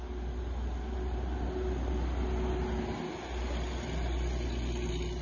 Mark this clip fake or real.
real